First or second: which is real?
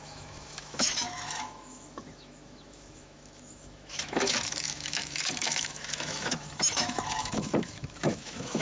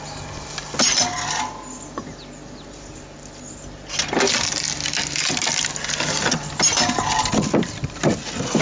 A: second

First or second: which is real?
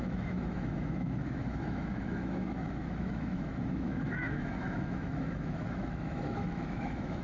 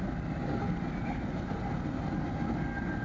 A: second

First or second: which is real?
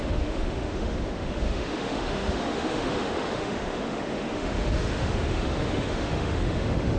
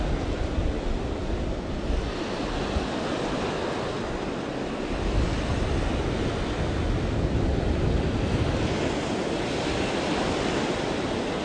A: second